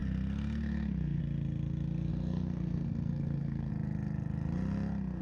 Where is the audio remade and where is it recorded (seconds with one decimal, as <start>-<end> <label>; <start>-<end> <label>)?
0.0-1.2 remade; 1.2-2.1 recorded; 2.1-3.7 remade; 3.7-5.2 recorded